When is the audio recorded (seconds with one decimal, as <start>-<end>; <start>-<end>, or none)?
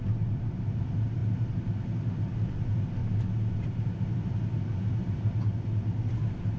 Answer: 0.0-6.6